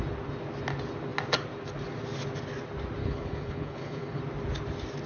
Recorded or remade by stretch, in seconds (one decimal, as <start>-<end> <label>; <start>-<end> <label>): 0.0-3.0 recorded; 3.0-4.2 remade; 4.2-5.1 recorded